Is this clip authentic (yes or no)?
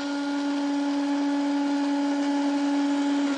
yes